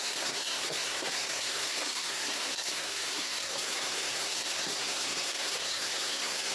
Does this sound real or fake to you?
fake